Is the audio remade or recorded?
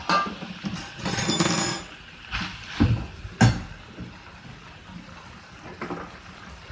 recorded